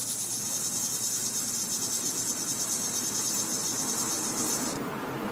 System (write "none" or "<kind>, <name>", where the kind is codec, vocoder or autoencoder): vocoder, BigVGAN v2